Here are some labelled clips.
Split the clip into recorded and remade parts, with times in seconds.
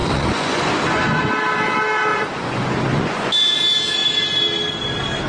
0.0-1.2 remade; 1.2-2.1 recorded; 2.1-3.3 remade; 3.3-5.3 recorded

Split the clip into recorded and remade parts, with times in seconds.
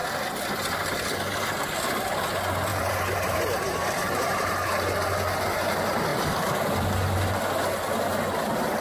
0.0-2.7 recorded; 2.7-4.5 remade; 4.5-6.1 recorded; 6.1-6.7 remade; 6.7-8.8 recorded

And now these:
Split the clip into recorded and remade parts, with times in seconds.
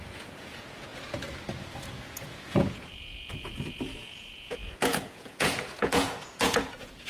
0.0-0.9 remade; 0.9-1.8 recorded; 1.8-7.1 remade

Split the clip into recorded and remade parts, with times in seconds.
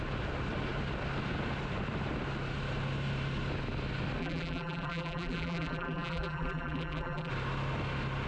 0.0-4.2 recorded; 4.2-7.3 remade; 7.3-8.3 recorded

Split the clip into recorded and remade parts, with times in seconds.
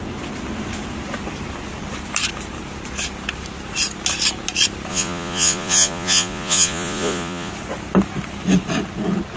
0.0-4.9 recorded; 4.9-7.5 remade; 7.5-9.4 recorded